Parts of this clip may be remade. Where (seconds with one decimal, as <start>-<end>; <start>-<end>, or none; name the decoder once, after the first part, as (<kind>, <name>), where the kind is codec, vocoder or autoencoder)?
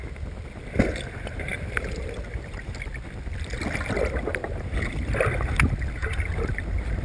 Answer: 6.0-6.6 (vocoder, BigVGAN v2)